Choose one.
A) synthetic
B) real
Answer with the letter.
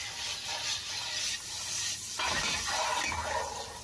B